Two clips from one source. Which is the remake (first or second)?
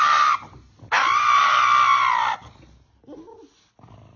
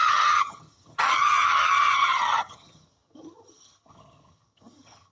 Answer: second